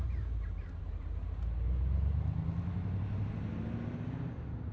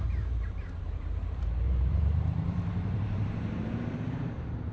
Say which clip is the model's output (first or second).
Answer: second